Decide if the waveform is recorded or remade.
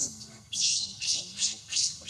remade